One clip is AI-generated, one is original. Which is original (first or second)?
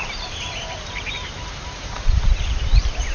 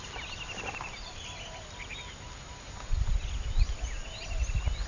second